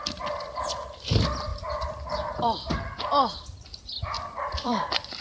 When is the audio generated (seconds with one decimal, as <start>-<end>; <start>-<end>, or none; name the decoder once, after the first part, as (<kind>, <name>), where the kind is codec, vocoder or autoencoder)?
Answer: 0.0-1.5 (vocoder, BigVGAN v2); 4.6-5.2